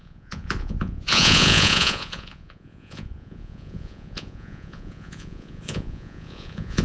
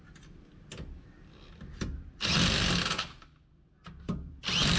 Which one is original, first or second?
second